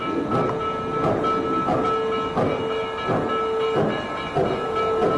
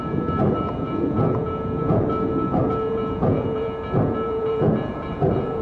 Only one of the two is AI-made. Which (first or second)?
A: second